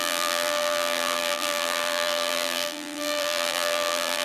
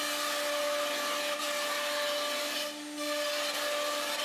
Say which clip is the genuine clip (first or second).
second